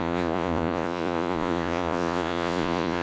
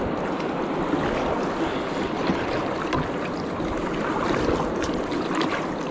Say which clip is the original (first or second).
second